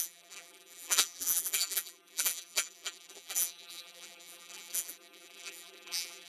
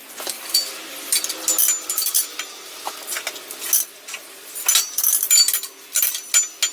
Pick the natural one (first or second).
second